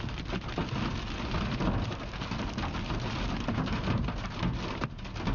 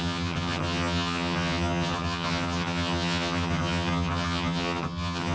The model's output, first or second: second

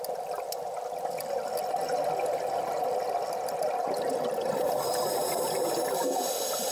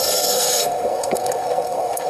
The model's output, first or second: second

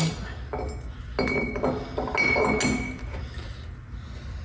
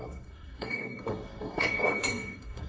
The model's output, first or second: second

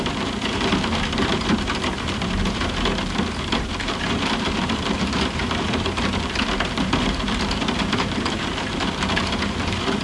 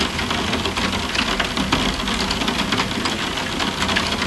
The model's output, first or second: first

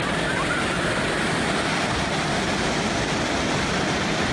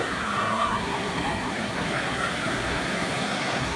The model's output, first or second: second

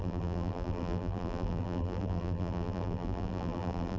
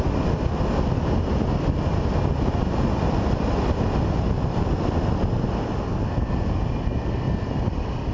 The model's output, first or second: first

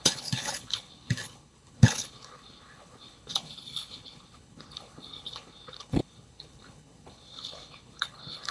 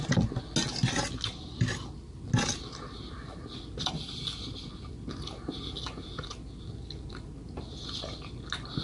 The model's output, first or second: first